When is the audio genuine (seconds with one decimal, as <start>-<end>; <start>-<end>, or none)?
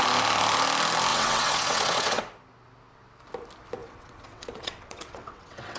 0.0-1.1; 2.2-3.8